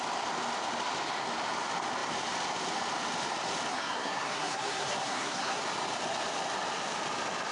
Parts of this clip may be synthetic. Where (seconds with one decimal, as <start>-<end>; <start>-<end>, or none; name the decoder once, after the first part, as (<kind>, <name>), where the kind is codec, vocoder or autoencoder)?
3.7-5.6 (codec, SNAC)